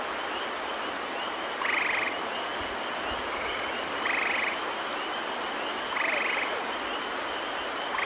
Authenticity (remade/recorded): recorded